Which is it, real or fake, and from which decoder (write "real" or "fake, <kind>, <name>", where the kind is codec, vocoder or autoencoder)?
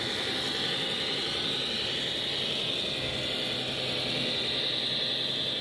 real